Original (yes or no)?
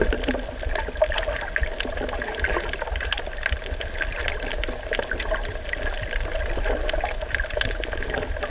yes